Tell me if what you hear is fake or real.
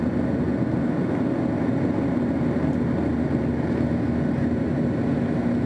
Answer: real